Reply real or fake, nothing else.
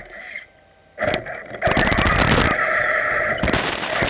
real